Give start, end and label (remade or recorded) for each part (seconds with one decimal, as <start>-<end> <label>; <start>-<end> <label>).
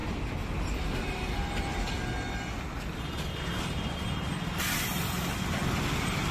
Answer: 0.0-2.0 remade; 2.0-6.3 recorded